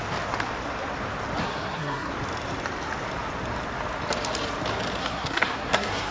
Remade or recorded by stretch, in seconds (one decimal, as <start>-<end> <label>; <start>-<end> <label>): 0.0-1.4 recorded; 1.4-2.1 remade; 2.1-5.0 recorded; 5.0-6.1 remade